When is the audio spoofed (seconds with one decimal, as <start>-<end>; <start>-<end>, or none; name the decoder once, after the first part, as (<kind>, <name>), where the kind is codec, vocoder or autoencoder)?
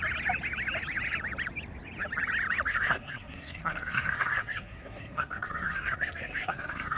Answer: 2.7-7.0 (codec, SNAC)